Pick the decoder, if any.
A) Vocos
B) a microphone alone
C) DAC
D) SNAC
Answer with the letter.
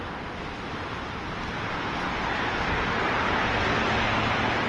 B